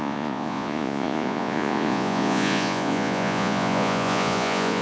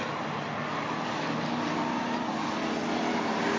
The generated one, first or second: first